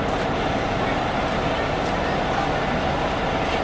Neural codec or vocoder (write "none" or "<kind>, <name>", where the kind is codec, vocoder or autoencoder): none